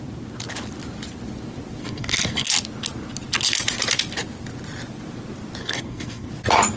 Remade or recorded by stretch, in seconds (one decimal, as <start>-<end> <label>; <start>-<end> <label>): 0.0-1.8 recorded; 1.8-2.5 remade; 2.5-5.6 recorded; 5.6-6.3 remade; 6.3-6.8 recorded